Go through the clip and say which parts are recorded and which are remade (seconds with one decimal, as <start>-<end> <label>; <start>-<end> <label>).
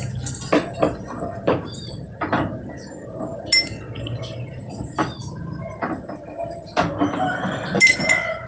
0.0-8.5 recorded